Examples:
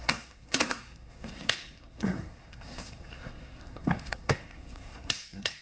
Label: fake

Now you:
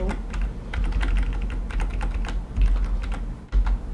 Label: real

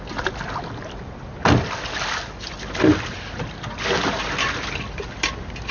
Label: real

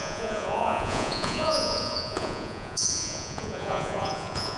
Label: fake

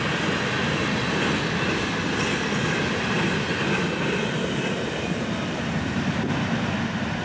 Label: real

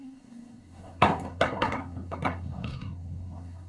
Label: fake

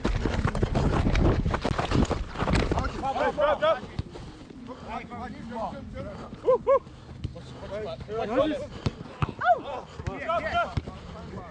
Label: real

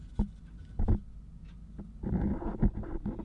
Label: real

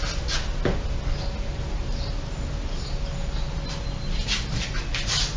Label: real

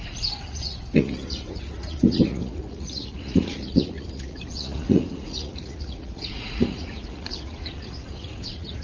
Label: fake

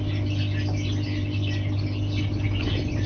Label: real